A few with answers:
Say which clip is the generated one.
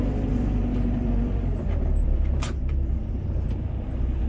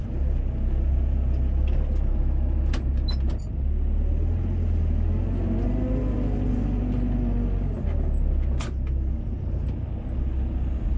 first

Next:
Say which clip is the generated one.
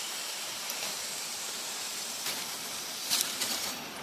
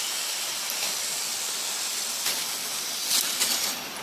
first